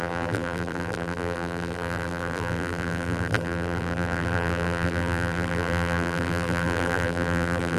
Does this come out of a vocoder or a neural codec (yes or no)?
yes